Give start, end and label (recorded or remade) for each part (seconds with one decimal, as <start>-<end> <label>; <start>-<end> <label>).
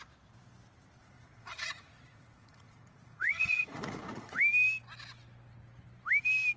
0.0-1.0 recorded; 1.0-4.4 remade; 4.4-6.6 recorded